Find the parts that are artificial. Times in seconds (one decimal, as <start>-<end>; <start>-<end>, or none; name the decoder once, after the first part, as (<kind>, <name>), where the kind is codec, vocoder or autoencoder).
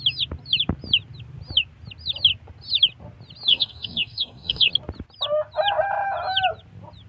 3.5-4.7 (codec, DAC)